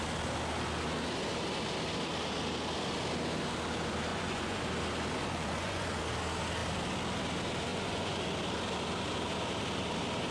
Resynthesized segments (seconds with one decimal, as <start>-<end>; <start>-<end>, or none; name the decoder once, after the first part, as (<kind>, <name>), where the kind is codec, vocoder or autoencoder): 4.1-4.6 (vocoder, Vocos); 5.2-6.0; 7.7-8.2